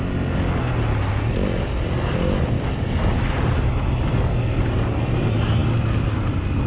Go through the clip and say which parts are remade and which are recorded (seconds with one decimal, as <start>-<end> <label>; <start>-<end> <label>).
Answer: 0.0-6.7 recorded